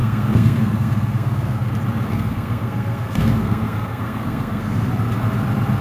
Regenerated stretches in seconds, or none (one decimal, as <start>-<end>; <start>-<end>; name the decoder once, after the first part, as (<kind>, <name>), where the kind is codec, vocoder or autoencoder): 0.0-1.7 (codec, SNAC); 2.1-4.9